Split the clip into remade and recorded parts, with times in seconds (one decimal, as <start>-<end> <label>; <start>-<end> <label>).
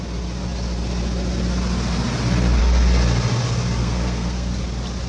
0.0-3.8 recorded; 3.8-4.5 remade; 4.5-5.1 recorded